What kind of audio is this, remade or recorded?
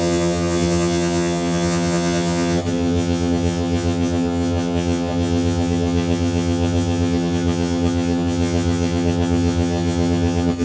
remade